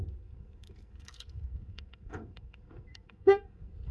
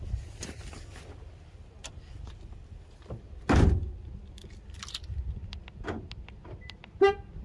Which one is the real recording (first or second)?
second